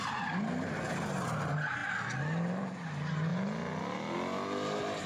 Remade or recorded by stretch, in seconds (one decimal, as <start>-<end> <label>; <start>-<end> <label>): 0.0-5.1 recorded